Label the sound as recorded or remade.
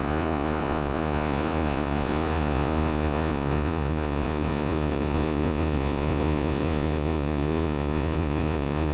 remade